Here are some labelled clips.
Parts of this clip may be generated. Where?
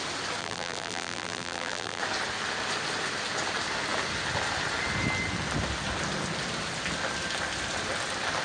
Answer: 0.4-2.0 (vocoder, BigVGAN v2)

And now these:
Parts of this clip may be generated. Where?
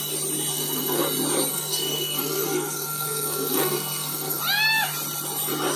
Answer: 0.5-1.0 (codec, SNAC); 1.5-4.4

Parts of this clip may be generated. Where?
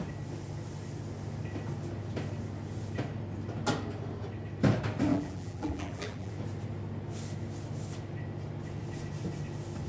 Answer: 5.1-6.3 (vocoder, BigVGAN v2)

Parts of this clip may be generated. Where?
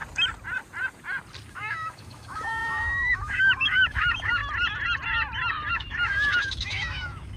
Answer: 1.5-4.4 (autoencoder, DAC-VAE); 5.7-7.4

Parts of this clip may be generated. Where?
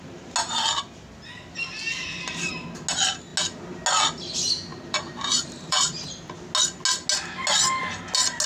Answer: 4.7-6.3 (vocoder, BigVGAN v2)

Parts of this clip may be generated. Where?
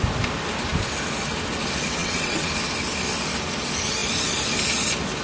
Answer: 2.0-2.5 (vocoder, WaveNeXt)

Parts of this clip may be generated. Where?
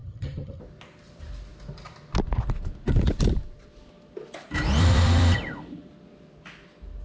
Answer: 0.0-0.6 (vocoder, HiFi-GAN)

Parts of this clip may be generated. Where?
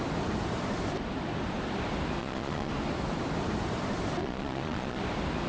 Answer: 2.2-2.7 (vocoder, Vocos); 4.2-5.0